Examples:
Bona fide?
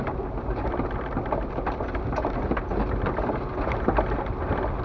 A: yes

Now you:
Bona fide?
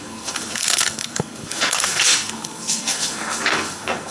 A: no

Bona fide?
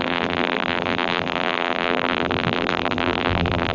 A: no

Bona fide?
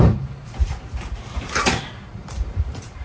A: no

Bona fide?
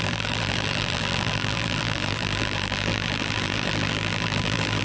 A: no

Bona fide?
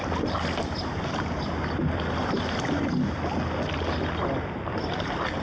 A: yes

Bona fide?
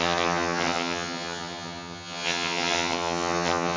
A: no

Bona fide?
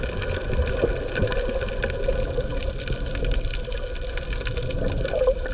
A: yes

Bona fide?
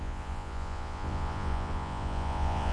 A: no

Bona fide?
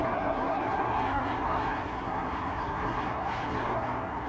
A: no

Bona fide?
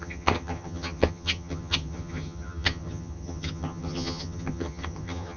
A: no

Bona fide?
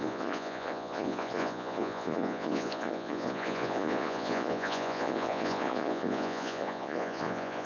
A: no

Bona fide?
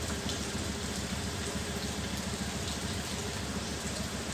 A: yes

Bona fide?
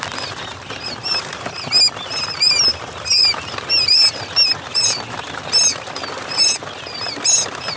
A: yes